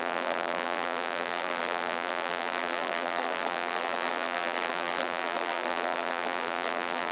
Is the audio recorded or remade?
remade